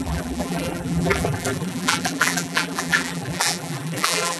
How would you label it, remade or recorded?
remade